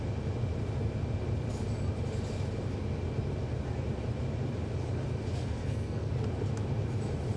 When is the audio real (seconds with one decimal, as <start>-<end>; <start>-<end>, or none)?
0.0-5.4; 6.1-7.4